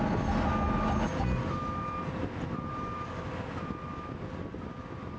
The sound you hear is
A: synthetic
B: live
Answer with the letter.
B